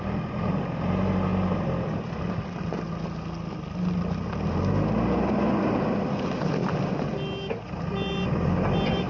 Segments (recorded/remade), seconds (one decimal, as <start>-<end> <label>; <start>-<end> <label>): 0.0-9.1 recorded